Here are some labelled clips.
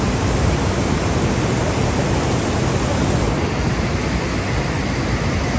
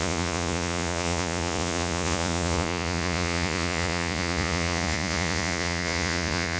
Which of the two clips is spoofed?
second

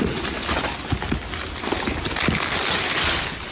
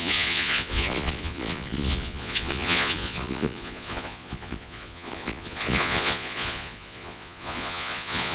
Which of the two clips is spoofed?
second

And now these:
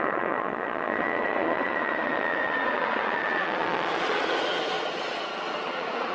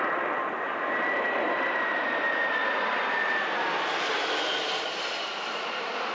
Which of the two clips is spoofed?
first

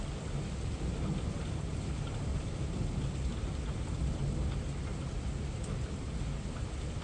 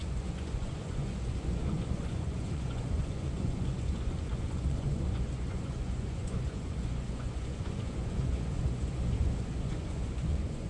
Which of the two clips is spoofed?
second